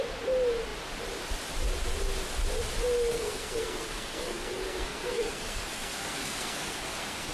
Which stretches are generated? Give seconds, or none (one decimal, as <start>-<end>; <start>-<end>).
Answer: 3.1-7.3